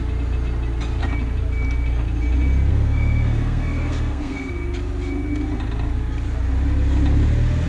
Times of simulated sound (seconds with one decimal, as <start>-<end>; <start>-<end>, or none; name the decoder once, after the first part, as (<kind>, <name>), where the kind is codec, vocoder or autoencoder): 2.7-4.5 (codec, SNAC)